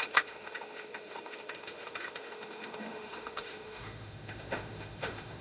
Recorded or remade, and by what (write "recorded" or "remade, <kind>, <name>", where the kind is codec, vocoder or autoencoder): remade, autoencoder, DAC-VAE